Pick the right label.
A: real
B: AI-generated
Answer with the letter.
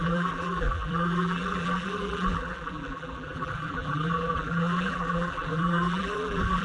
B